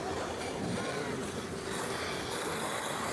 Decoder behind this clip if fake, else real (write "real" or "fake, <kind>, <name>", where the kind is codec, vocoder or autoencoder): real